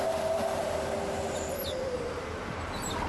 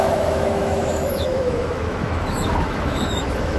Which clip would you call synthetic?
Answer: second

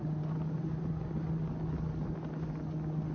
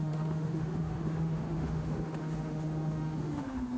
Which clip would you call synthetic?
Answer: second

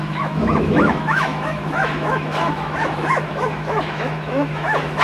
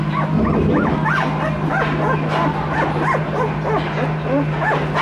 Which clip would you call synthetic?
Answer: first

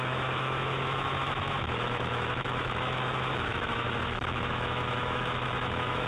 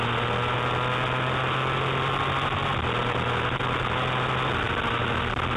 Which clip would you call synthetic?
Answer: first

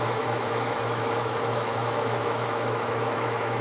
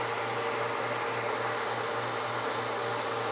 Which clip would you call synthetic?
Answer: first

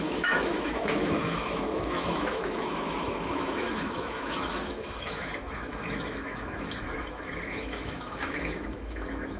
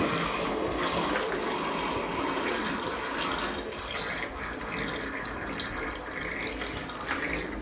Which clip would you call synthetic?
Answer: first